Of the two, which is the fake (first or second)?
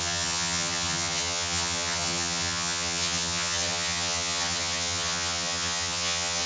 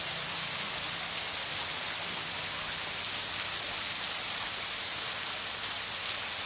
first